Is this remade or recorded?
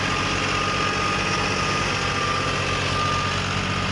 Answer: recorded